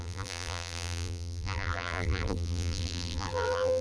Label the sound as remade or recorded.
remade